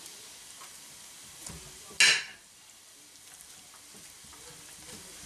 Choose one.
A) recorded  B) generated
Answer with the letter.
A